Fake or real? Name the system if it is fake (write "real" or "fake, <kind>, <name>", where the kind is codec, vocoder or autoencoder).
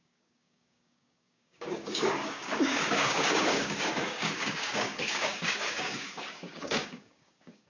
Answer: fake, codec, DAC